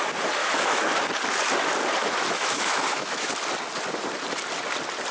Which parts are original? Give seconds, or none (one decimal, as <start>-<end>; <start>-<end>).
0.0-0.4; 1.0-2.0; 3.3-5.1